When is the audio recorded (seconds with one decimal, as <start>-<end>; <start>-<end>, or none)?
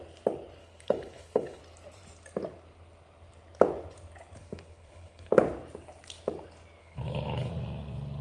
0.0-0.6; 1.6-4.4; 5.3-6.8; 7.5-8.2